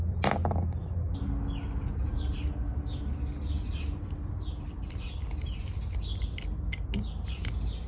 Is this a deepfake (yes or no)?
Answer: no